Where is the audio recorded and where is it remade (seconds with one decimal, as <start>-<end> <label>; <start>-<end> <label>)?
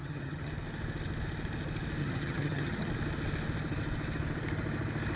0.0-0.5 remade; 0.5-2.0 recorded; 2.0-2.9 remade; 2.9-5.2 recorded